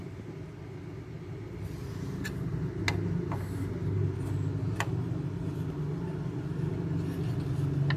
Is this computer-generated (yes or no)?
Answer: no